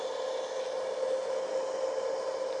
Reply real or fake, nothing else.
real